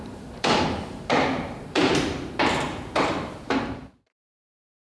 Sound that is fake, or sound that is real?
fake